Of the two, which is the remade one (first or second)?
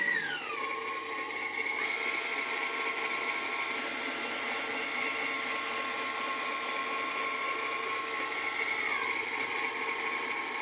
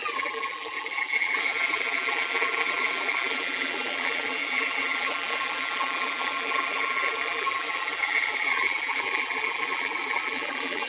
second